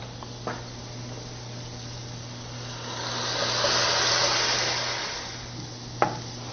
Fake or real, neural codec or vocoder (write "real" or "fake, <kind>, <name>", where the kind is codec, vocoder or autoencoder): real